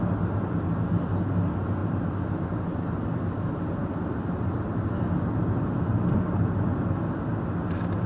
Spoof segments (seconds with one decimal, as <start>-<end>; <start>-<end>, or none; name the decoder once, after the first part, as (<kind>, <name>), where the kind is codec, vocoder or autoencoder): none